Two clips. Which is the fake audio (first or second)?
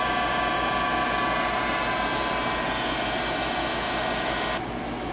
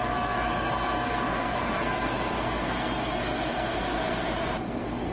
second